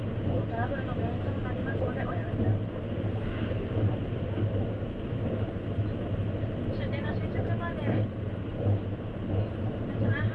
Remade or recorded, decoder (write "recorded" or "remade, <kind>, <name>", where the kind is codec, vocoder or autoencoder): recorded